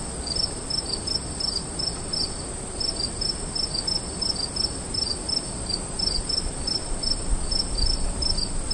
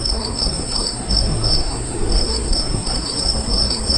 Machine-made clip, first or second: second